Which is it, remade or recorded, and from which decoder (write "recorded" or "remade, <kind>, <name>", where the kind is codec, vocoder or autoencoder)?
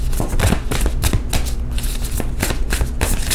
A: recorded